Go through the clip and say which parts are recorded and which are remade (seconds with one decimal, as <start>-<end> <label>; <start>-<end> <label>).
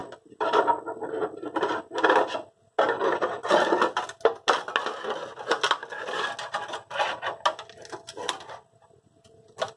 0.0-9.8 recorded